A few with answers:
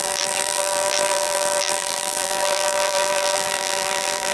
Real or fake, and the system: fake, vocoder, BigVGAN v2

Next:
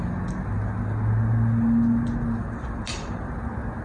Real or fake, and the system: real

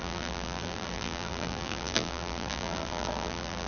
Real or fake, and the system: fake, vocoder, BigVGAN v2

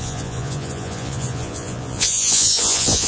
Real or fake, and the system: fake, vocoder, Vocos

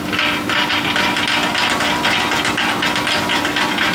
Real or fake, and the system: real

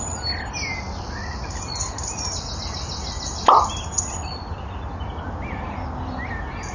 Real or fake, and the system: real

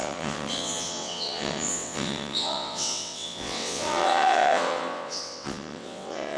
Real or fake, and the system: fake, vocoder, WaveNeXt